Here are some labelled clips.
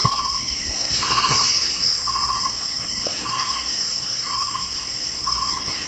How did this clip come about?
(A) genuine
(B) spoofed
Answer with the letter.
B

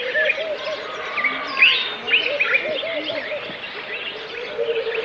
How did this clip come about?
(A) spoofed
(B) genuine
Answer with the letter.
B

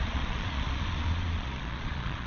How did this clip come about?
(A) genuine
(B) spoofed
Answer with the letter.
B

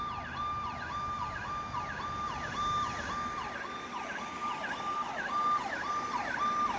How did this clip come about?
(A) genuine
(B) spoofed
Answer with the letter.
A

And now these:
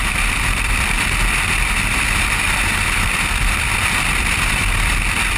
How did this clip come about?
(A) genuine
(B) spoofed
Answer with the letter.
B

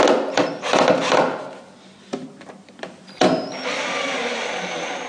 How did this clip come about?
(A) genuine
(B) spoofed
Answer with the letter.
A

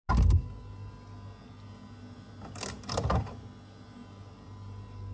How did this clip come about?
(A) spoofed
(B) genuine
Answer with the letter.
B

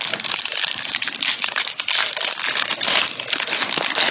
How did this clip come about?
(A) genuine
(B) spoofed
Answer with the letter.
A